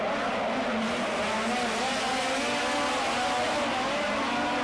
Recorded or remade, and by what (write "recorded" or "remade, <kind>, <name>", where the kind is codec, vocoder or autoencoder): recorded